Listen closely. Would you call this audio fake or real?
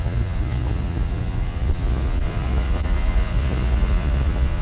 fake